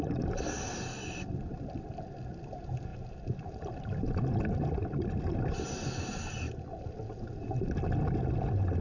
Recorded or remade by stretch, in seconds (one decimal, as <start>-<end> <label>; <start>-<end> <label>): 0.0-8.8 recorded